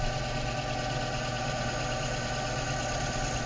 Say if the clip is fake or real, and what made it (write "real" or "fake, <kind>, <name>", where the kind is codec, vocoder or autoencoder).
real